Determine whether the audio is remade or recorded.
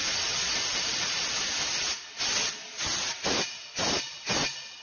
recorded